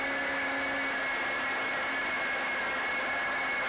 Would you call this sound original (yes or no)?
yes